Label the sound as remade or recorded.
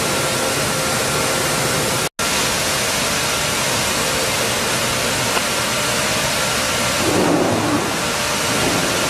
recorded